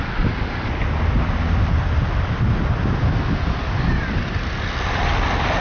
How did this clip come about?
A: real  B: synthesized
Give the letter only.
A